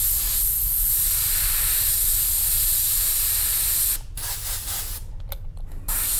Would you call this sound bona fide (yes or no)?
yes